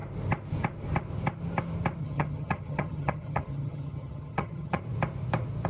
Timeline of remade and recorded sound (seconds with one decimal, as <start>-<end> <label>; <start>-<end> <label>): 0.0-2.0 recorded; 2.0-4.8 remade; 4.8-5.7 recorded

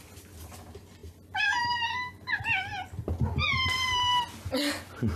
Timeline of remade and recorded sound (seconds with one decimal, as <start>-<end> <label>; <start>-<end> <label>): 0.0-5.2 recorded

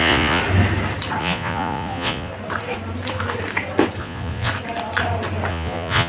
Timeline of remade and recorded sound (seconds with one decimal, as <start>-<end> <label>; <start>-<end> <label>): 0.0-0.4 remade; 0.4-1.2 recorded; 1.2-2.3 remade; 2.3-4.0 recorded; 4.0-4.5 remade; 4.5-5.5 recorded; 5.5-6.1 remade

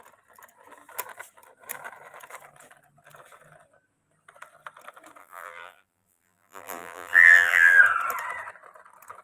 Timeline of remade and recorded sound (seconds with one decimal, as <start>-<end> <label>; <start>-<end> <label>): 0.0-5.2 recorded; 5.2-7.8 remade; 7.8-9.2 recorded

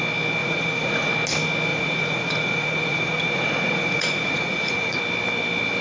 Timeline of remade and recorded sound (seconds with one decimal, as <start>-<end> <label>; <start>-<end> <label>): 0.0-0.4 recorded; 0.4-1.1 remade; 1.1-1.7 recorded; 1.7-5.0 remade; 5.0-5.8 recorded

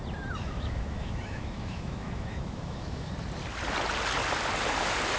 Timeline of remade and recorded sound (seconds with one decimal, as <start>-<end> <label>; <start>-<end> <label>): 0.0-0.4 recorded; 0.4-3.1 remade; 3.1-5.2 recorded